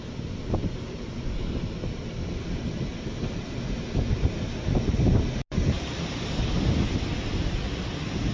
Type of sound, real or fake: real